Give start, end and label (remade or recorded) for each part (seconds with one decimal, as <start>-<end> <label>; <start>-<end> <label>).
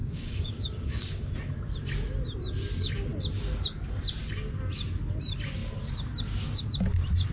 0.0-1.3 remade; 1.3-7.3 recorded